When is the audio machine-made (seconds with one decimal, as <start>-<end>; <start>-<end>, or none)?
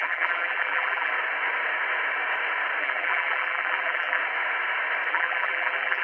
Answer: 0.0-1.1; 2.8-4.2; 5.1-6.0